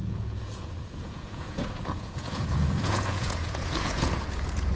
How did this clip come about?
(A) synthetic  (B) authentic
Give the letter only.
A